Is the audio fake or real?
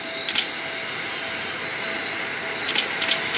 real